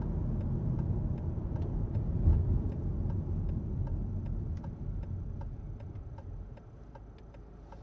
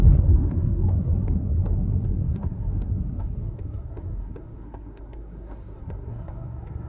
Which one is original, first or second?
first